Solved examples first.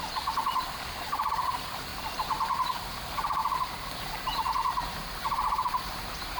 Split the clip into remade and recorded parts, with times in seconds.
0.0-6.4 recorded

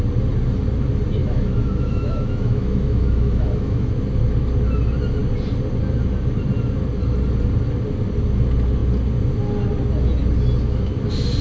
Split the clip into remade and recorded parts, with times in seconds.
0.0-1.2 recorded; 1.2-3.9 remade; 3.9-11.4 recorded

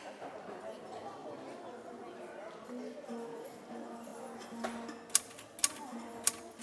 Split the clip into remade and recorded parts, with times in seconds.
0.0-6.6 recorded